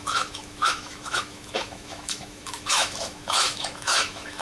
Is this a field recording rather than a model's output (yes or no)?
no